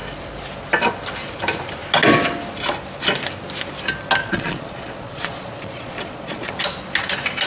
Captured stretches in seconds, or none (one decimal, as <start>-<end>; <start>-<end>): 0.0-4.2; 6.5-7.5